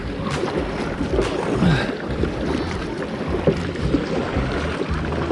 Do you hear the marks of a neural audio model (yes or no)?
no